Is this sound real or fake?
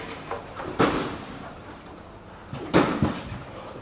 fake